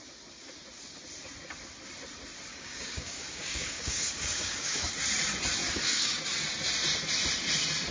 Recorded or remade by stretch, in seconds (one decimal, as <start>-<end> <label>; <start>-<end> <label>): 0.0-2.5 recorded; 2.5-4.9 remade; 4.9-5.6 recorded; 5.6-6.2 remade; 6.2-7.9 recorded